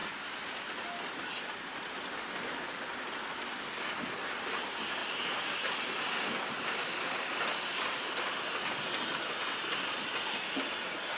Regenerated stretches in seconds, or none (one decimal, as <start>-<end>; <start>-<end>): 5.0-9.0